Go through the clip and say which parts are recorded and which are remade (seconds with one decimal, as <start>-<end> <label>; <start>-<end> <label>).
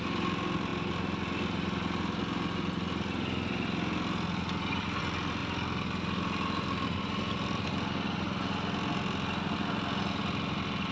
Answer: 0.0-10.9 recorded